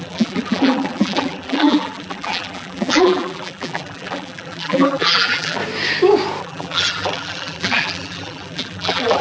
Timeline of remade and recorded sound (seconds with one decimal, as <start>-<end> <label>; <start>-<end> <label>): 0.0-5.6 remade; 5.6-6.4 recorded; 6.4-9.2 remade